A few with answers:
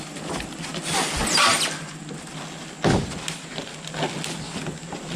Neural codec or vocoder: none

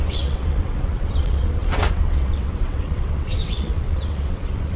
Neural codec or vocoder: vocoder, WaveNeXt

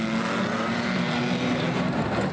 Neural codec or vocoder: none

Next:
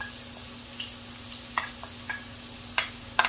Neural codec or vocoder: none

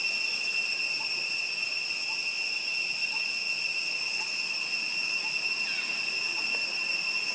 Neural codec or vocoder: none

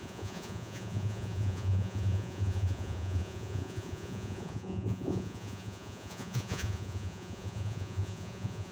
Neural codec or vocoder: vocoder, Vocos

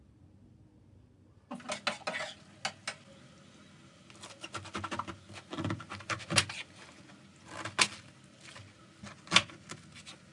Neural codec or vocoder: none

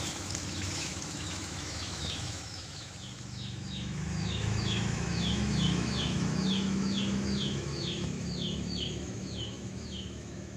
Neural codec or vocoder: autoencoder, DAC-VAE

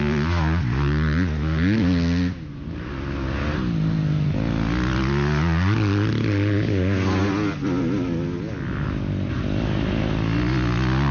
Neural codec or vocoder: none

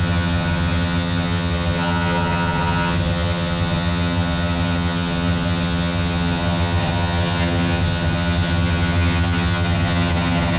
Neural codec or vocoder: vocoder, HiFi-GAN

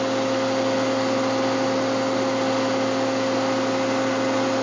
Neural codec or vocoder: none